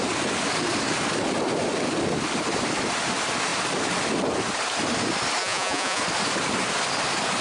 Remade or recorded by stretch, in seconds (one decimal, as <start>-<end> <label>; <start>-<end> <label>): 0.0-5.4 recorded; 5.4-6.0 remade; 6.0-7.4 recorded